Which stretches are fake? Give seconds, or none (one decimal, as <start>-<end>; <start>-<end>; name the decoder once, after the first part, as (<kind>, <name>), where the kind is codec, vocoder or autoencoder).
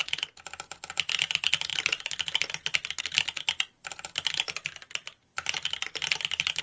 none